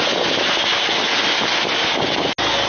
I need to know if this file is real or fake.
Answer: real